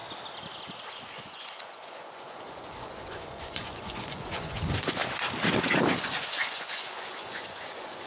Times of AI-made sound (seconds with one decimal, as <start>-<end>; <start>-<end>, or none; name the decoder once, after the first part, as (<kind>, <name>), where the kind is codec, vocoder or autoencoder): 0.9-5.0 (vocoder, Vocos); 5.9-8.1